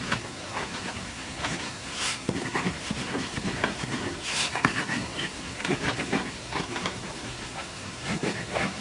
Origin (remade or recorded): remade